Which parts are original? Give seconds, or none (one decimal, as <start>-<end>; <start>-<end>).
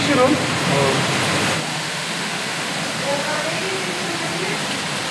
0.0-1.7; 2.7-5.1